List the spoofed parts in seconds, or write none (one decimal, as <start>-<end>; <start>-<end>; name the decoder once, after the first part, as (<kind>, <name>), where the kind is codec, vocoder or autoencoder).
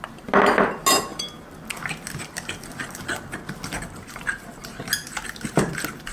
none